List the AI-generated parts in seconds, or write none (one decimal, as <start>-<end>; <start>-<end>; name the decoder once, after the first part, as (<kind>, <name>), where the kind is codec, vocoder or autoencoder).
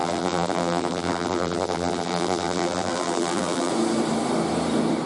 0.0-3.7 (vocoder, BigVGAN v2)